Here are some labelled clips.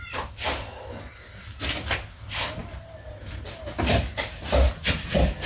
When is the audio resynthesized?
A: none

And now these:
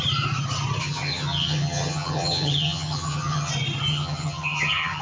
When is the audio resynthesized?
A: 0.8-3.5 (vocoder, HiFi-GAN); 3.9-5.0